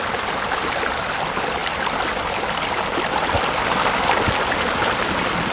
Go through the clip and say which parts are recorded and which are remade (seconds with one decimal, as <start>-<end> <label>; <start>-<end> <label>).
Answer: 0.0-5.5 recorded